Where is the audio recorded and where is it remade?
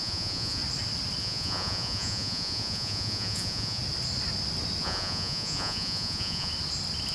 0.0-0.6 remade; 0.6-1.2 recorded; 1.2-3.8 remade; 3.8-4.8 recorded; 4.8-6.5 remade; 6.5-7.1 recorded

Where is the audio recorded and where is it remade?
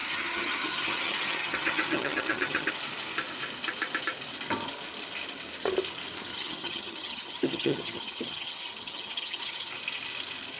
0.0-2.7 remade; 2.7-6.3 recorded; 6.3-9.7 remade; 9.7-10.6 recorded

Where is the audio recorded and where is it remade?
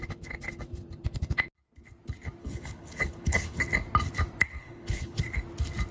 0.0-2.4 recorded; 2.4-3.6 remade; 3.6-4.6 recorded; 4.6-5.2 remade; 5.2-5.9 recorded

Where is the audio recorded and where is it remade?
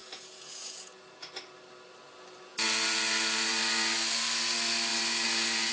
0.0-1.2 remade; 1.2-5.7 recorded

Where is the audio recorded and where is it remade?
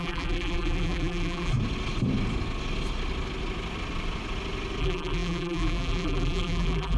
0.0-1.5 remade; 1.5-4.8 recorded; 4.8-7.0 remade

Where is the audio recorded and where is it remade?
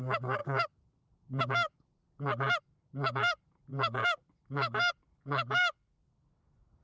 0.0-2.0 remade; 2.0-2.6 recorded; 2.6-6.8 remade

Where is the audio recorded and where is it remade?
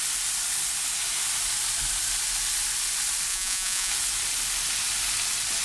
0.0-3.3 recorded; 3.3-3.9 remade; 3.9-5.6 recorded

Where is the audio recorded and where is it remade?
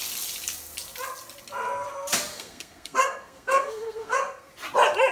0.0-2.3 recorded; 2.3-4.5 remade; 4.5-5.1 recorded